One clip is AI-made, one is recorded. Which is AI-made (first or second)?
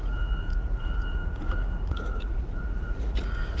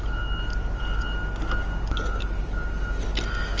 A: first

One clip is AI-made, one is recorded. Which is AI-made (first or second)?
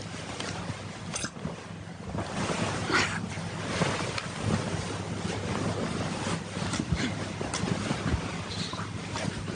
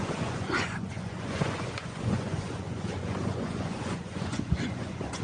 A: second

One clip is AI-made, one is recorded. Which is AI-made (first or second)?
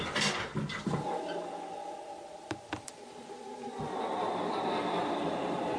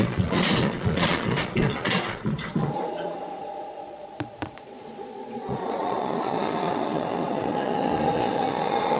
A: second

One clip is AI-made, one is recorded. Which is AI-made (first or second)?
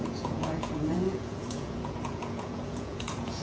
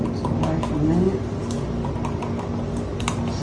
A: first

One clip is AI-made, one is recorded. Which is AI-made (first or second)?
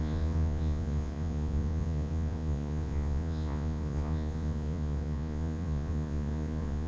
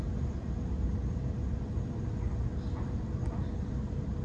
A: first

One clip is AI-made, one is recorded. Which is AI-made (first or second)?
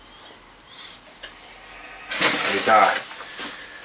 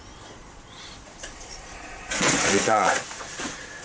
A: second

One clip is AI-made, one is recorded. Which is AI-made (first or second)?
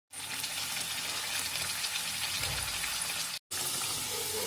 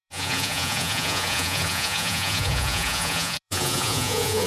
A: second